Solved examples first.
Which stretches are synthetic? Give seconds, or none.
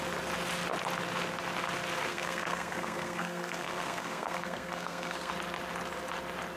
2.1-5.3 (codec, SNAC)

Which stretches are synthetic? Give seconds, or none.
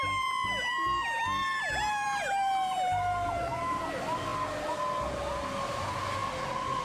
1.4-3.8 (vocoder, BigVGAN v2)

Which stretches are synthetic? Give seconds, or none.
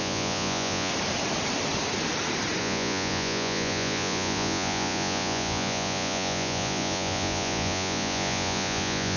0.0-0.9 (vocoder, Vocos); 2.6-9.2